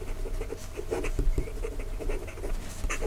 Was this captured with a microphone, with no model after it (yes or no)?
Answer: yes